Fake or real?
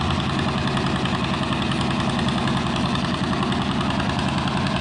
real